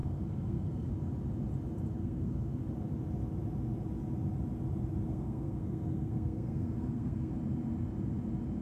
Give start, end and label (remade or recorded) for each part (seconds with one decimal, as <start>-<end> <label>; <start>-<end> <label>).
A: 0.0-0.9 remade; 0.9-2.0 recorded; 2.0-2.6 remade; 2.6-5.1 recorded; 5.1-7.3 remade; 7.3-8.6 recorded